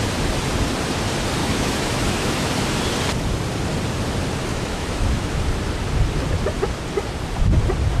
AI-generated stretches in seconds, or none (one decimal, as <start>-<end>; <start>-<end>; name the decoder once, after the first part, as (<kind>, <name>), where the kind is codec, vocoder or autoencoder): 1.4-2.5 (autoencoder, DAC-VAE); 4.5-5.4